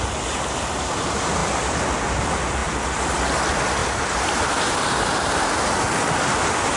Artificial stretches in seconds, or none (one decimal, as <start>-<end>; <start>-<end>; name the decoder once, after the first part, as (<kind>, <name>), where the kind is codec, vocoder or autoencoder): 3.8-4.8 (vocoder, BigVGAN v2)